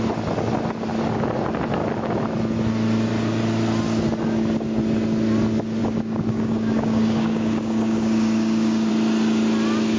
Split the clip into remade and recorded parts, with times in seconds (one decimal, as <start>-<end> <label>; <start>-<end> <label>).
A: 0.0-5.8 recorded; 5.8-8.9 remade; 8.9-10.0 recorded